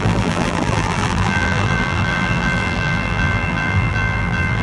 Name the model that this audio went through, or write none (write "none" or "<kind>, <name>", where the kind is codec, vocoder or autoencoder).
vocoder, BigVGAN v2